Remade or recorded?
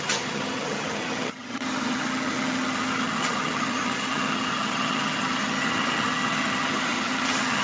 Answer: remade